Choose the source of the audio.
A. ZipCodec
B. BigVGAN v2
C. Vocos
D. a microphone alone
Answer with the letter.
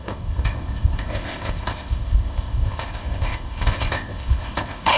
A